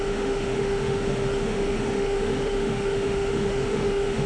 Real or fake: fake